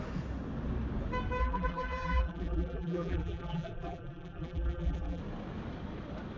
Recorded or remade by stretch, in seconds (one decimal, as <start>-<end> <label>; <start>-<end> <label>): 0.0-1.4 recorded; 1.4-5.2 remade; 5.2-6.4 recorded